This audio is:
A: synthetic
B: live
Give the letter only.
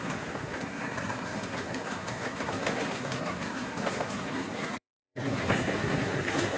A